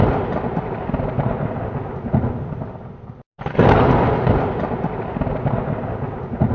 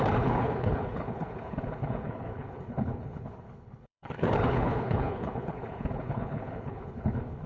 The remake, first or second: second